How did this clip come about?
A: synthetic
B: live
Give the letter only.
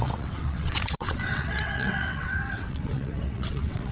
A